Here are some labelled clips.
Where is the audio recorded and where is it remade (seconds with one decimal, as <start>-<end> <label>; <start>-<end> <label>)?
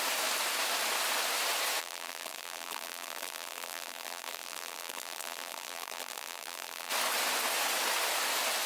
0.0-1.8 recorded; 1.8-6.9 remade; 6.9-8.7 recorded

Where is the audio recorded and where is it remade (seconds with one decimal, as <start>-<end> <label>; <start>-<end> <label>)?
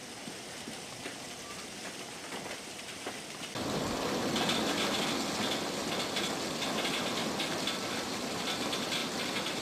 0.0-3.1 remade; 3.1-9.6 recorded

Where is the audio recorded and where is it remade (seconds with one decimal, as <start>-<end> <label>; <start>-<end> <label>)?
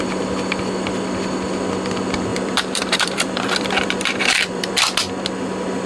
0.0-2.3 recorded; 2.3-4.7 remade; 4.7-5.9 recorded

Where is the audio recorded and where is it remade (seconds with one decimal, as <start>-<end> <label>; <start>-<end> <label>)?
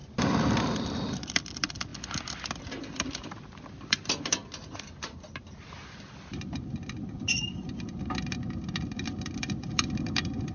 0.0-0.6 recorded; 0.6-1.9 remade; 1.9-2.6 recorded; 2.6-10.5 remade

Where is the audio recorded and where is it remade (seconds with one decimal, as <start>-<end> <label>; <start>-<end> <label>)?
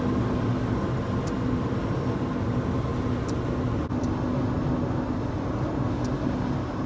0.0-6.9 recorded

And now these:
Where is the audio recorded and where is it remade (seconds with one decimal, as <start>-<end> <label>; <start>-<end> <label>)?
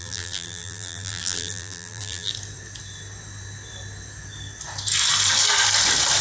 0.0-2.3 remade; 2.3-6.2 recorded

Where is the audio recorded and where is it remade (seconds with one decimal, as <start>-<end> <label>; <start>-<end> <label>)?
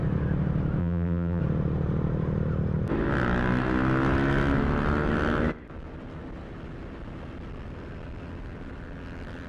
0.0-0.8 recorded; 0.8-1.4 remade; 1.4-9.5 recorded